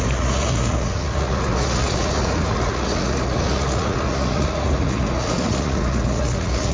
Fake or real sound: fake